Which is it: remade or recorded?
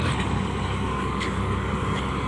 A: remade